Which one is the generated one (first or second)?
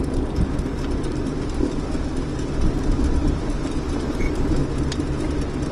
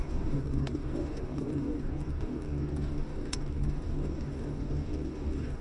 second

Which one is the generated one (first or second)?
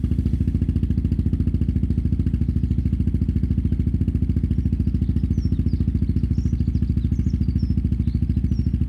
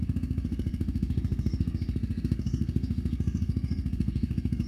second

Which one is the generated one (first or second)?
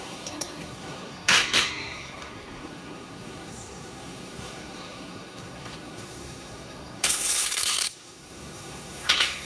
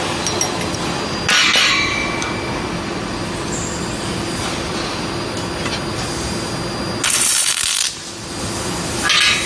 first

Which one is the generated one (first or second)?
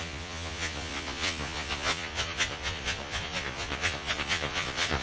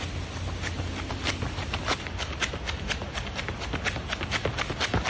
first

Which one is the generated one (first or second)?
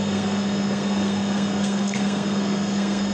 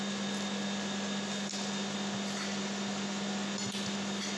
first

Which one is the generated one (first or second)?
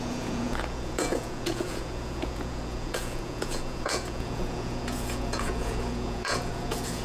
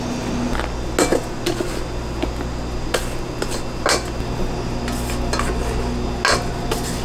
first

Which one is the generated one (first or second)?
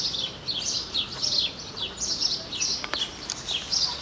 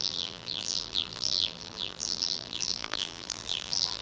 second